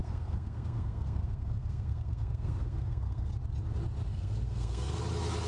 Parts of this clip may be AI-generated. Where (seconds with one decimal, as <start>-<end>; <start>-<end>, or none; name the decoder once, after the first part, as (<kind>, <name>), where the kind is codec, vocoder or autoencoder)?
0.0-3.3 (codec, SNAC); 4.1-5.0